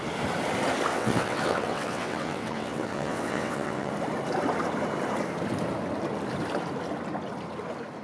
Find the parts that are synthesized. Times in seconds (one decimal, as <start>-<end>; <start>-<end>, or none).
0.9-3.9